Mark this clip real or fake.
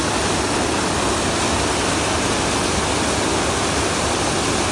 real